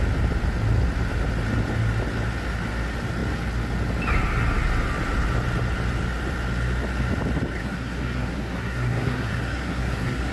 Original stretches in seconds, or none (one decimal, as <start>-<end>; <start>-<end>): 0.0-7.6